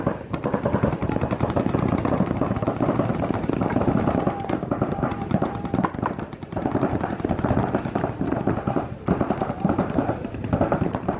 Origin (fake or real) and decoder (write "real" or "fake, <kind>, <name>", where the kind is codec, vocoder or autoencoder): fake, vocoder, BigVGAN v2